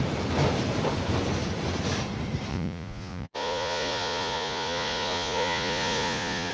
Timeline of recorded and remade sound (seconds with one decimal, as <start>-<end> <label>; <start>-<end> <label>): 0.0-2.5 recorded; 2.5-6.5 remade